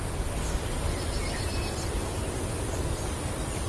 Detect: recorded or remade recorded